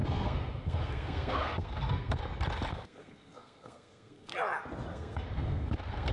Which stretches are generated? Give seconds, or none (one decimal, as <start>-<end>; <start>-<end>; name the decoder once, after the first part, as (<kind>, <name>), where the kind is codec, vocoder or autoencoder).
0.0-2.2 (codec, SNAC); 2.7-4.3; 4.9-6.1

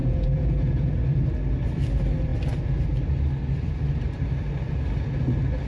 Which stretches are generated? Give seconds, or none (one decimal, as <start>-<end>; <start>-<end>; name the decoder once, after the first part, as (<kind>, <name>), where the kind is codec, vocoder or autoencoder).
0.0-0.9 (vocoder, Vocos)

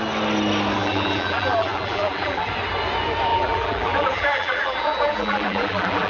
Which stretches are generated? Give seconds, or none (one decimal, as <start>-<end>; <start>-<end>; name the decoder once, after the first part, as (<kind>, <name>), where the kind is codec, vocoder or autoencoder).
0.8-2.5 (vocoder, BigVGAN v2); 3.3-6.1

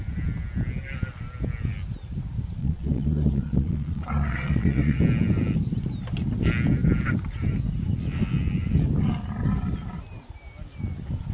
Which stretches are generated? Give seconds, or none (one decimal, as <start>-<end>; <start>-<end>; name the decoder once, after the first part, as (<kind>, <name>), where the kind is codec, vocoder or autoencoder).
2.6-5.0 (vocoder, Vocos)